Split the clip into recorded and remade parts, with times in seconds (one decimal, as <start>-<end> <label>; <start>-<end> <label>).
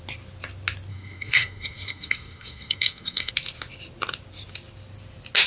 0.0-0.9 recorded; 0.9-3.3 remade; 3.3-5.5 recorded